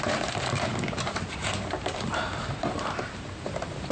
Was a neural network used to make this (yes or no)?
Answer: yes